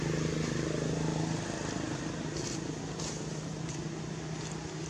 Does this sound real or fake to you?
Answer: real